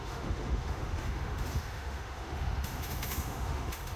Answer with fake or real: fake